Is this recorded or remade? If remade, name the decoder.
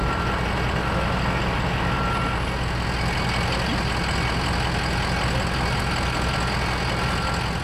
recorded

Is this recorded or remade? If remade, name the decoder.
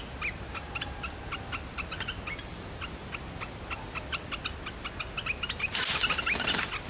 recorded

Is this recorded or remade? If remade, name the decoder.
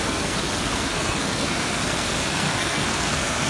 remade, codec, SNAC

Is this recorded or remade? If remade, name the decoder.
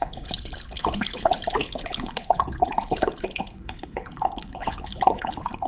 remade, codec, HILCodec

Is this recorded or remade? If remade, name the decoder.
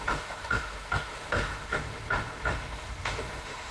remade, autoencoder, DAC-VAE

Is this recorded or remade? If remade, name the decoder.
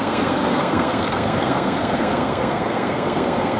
remade, codec, SNAC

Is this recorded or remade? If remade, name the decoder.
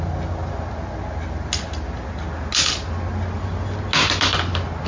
recorded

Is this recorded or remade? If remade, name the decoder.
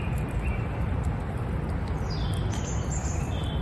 recorded